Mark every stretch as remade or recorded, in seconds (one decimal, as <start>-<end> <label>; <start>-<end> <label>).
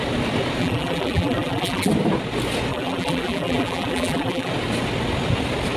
0.0-0.6 recorded; 0.6-1.9 remade; 1.9-2.7 recorded; 2.7-4.5 remade; 4.5-5.8 recorded